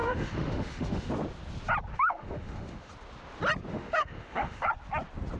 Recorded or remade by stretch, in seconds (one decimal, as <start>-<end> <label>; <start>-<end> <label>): 0.0-1.1 remade; 1.1-1.9 recorded; 1.9-2.9 remade; 2.9-3.7 recorded; 3.7-4.7 remade; 4.7-5.4 recorded